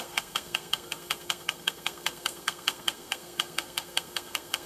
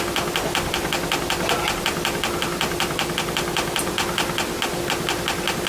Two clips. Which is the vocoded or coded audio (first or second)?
first